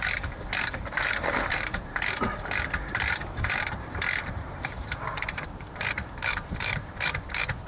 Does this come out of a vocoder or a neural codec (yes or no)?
yes